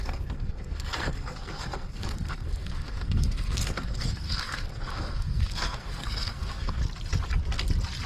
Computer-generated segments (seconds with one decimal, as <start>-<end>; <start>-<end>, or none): 0.0-6.8

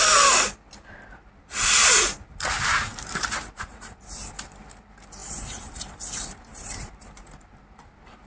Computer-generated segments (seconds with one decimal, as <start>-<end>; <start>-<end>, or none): 2.9-4.0; 5.2-6.0; 6.5-7.5

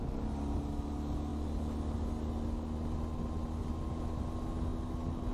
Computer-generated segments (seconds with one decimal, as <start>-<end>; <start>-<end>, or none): none

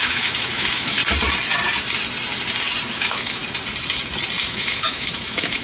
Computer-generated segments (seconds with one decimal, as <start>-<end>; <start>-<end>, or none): 0.0-1.0; 2.9-3.4; 4.4-5.6

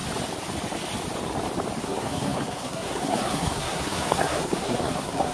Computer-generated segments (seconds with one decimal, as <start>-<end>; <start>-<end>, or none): 1.8-5.3

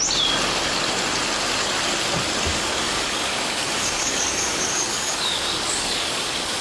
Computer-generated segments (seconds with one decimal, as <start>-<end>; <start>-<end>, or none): 2.5-6.6

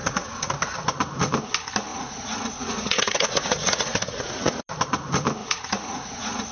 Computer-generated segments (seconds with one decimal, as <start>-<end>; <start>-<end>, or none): 0.0-0.5; 1.9-4.6; 5.4-6.5

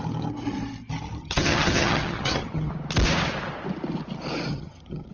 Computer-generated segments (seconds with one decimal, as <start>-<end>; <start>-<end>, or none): 1.2-2.7; 4.5-5.1